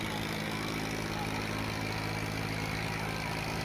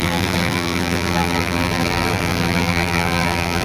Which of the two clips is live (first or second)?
first